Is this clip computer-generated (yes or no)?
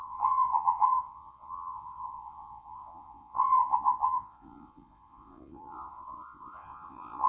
yes